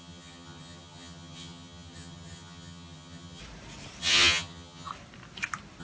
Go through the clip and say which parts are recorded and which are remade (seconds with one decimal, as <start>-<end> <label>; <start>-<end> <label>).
0.0-3.4 remade; 3.4-4.0 recorded; 4.0-4.9 remade; 4.9-5.8 recorded